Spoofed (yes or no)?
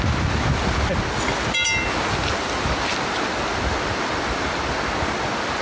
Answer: no